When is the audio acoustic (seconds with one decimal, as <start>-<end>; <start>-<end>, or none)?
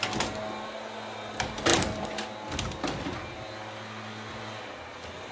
0.0-5.3